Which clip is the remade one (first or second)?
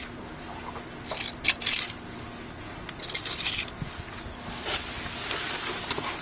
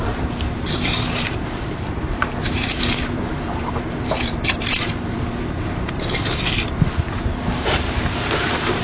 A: second